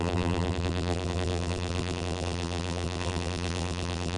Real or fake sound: fake